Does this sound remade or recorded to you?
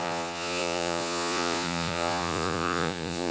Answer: remade